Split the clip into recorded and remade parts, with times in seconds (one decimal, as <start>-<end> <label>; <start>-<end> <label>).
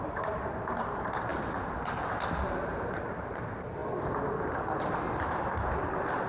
0.0-3.8 remade; 3.8-5.2 recorded; 5.2-6.3 remade